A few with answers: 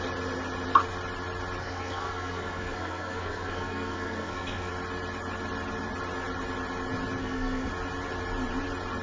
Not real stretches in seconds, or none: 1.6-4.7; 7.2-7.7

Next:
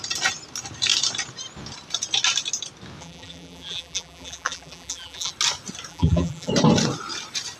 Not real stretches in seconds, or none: 3.0-5.3; 5.9-6.5